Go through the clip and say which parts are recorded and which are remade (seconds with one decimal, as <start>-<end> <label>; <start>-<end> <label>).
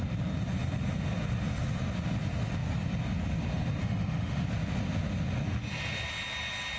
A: 0.0-3.8 recorded; 3.8-4.4 remade; 4.4-6.8 recorded